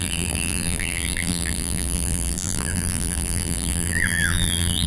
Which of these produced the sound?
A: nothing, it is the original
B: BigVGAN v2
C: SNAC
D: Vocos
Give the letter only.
B